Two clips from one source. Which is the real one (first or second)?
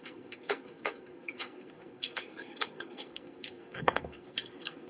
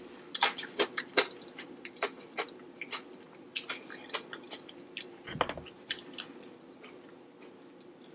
second